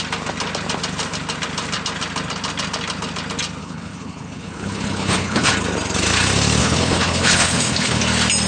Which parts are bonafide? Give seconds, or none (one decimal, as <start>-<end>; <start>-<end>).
0.0-3.6; 5.5-6.6; 8.0-8.5